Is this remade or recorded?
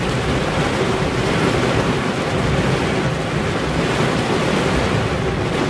recorded